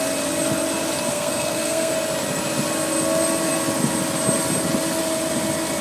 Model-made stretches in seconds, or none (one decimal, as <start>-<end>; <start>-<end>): 1.1-1.9